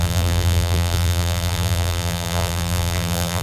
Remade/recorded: remade